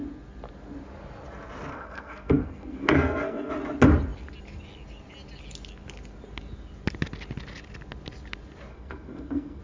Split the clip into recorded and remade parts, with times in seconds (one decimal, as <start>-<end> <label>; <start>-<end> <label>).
0.0-1.7 recorded; 1.7-3.5 remade; 3.5-8.7 recorded; 8.7-9.6 remade